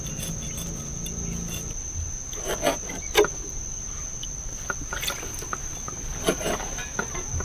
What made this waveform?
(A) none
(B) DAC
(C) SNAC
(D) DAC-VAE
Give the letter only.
A